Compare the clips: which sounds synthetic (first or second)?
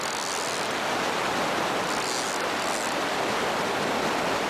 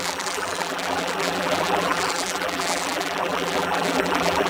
second